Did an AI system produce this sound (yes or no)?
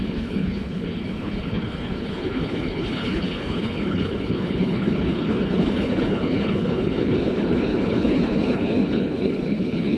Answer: yes